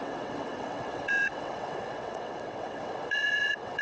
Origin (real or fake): fake